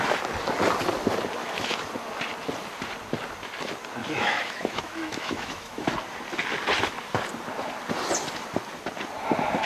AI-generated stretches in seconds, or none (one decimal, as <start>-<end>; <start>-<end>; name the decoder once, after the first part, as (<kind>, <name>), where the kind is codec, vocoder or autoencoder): 1.4-1.9 (autoencoder, DAC-VAE); 4.0-5.9